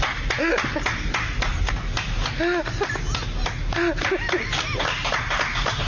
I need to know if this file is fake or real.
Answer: real